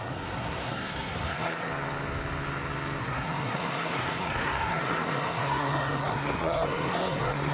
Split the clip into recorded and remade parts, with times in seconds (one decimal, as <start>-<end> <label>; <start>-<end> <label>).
0.0-1.7 remade; 1.7-3.0 recorded; 3.0-7.5 remade